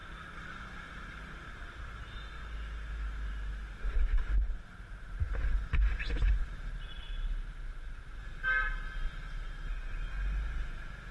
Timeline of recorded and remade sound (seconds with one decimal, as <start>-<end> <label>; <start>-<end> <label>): 0.0-11.1 recorded